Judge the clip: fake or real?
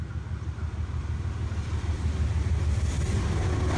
real